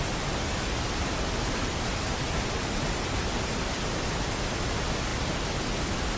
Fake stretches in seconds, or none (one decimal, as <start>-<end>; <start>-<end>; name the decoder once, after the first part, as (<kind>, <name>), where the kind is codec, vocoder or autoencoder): none